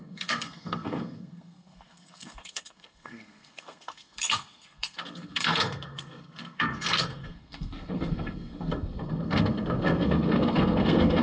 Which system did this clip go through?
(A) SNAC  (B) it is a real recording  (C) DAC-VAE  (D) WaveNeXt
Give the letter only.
A